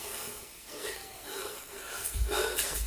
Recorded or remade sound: remade